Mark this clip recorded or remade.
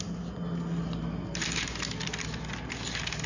recorded